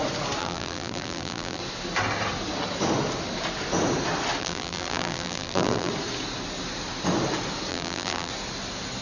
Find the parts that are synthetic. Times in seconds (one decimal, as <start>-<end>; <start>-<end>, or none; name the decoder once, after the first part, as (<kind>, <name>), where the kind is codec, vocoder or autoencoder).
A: 0.4-1.6 (vocoder, BigVGAN v2); 4.4-5.9; 7.7-8.3